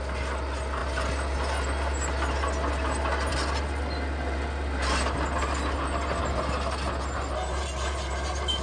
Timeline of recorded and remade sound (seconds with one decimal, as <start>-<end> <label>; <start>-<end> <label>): 0.0-8.6 recorded